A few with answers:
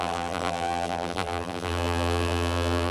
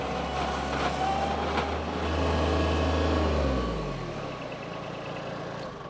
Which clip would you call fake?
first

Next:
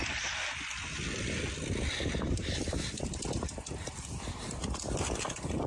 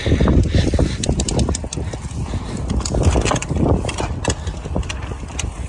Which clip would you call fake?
first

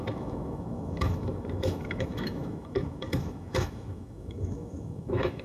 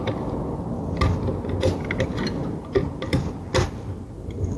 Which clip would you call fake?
first